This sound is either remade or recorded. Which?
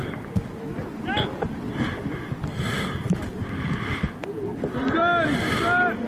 recorded